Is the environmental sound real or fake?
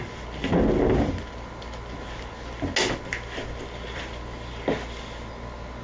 real